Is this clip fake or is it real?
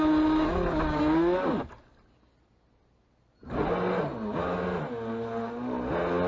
real